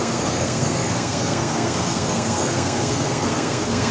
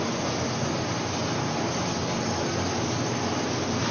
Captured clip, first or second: second